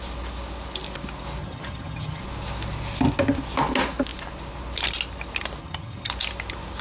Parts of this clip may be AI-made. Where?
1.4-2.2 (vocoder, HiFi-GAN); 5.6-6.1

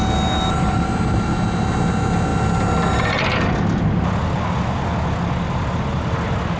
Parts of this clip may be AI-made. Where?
none

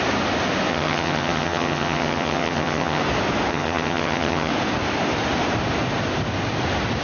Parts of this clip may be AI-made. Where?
0.7-3.0 (vocoder, HiFi-GAN); 3.5-4.5

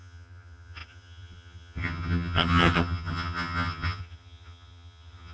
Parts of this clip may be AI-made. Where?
0.0-5.3 (vocoder, HiFi-GAN)

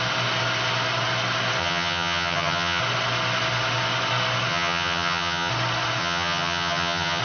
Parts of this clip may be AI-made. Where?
1.6-2.8 (vocoder, HiFi-GAN); 4.5-5.5; 6.0-7.2

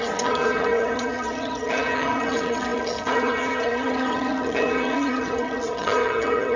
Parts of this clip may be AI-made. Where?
0.0-6.6 (vocoder, HiFi-GAN)

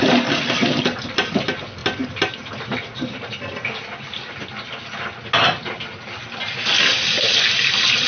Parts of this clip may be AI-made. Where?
none